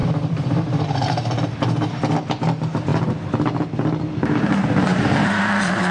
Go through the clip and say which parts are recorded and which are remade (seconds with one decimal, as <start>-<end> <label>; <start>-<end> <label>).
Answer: 0.0-2.0 remade; 2.0-4.9 recorded; 4.9-5.5 remade; 5.5-5.9 recorded